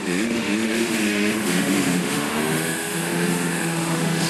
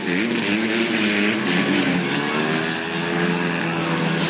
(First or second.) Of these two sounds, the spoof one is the first